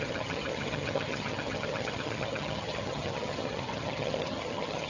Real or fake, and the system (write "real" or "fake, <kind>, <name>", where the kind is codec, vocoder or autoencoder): fake, vocoder, HiFi-GAN